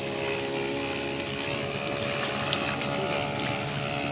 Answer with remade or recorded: recorded